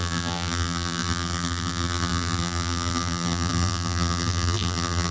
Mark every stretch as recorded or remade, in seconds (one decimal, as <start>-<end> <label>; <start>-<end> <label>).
0.0-5.1 remade